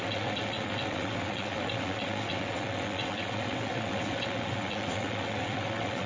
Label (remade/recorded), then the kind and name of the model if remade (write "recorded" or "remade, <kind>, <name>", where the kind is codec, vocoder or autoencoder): remade, vocoder, WaveNeXt